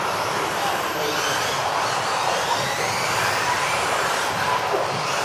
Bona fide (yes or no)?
no